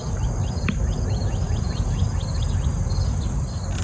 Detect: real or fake real